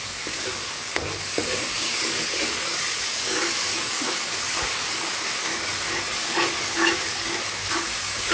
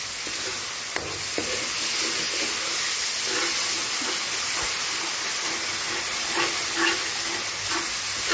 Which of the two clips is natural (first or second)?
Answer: second